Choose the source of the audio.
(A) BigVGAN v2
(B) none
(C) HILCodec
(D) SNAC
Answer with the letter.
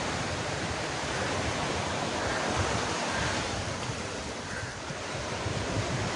A